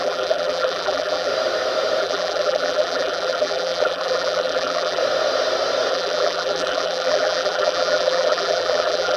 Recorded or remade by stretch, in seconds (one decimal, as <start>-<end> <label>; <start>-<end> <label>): 0.0-1.3 remade; 1.3-2.0 recorded; 2.0-5.0 remade; 5.0-5.9 recorded; 5.9-9.2 remade